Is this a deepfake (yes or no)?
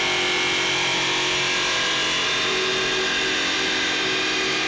no